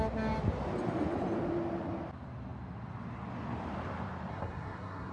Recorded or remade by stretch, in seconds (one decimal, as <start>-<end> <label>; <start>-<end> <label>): 0.0-4.3 recorded; 4.3-5.1 remade